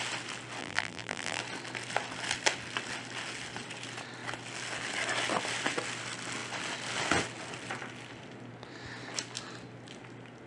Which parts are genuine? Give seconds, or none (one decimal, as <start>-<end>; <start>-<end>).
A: 0.0-0.6; 1.4-10.5